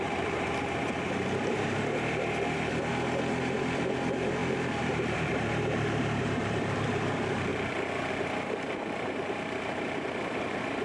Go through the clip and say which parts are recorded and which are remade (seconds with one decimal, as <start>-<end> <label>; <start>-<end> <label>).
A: 0.0-2.9 remade; 2.9-3.6 recorded; 3.6-7.5 remade; 7.5-8.1 recorded; 8.1-10.8 remade